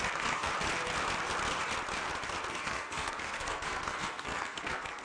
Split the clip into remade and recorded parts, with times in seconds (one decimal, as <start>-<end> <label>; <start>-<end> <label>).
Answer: 0.0-0.5 remade; 0.5-2.5 recorded; 2.5-5.0 remade